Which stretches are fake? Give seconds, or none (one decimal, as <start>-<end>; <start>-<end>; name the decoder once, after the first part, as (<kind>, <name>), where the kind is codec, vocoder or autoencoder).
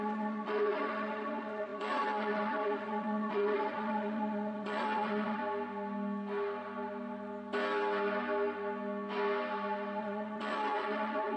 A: 0.0-5.4 (vocoder, Vocos); 10.0-11.4